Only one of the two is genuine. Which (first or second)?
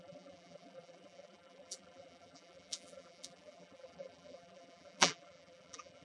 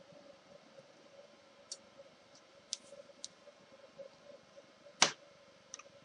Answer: second